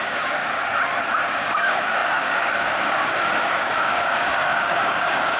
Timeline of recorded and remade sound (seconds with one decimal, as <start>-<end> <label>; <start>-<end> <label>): 0.0-0.4 remade; 0.4-1.2 recorded; 1.2-5.4 remade

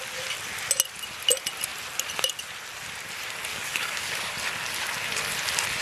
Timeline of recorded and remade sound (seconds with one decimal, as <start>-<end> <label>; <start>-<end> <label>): 0.0-3.5 recorded; 3.5-4.3 remade; 4.3-5.8 recorded

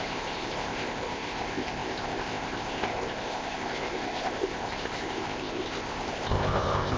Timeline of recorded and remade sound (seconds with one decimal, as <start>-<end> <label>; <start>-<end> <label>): 0.0-7.0 remade

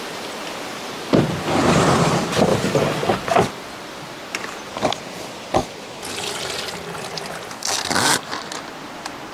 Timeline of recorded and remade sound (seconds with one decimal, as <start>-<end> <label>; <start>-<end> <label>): 0.0-9.3 recorded

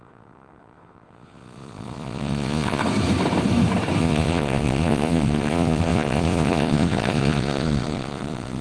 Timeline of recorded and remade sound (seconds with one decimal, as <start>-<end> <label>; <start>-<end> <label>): 0.0-2.8 remade; 2.8-4.0 recorded; 4.0-8.6 remade

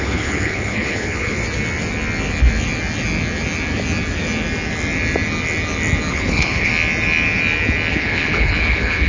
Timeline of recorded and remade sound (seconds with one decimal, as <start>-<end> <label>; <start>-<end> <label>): 0.0-1.4 remade; 1.4-6.1 recorded; 6.1-6.7 remade; 6.7-7.9 recorded; 7.9-9.1 remade

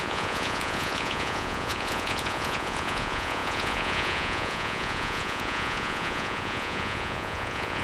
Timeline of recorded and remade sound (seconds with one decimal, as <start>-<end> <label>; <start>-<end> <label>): 0.0-7.8 remade

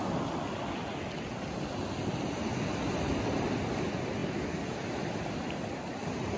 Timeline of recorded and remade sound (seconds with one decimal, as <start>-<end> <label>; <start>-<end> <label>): 0.0-6.4 recorded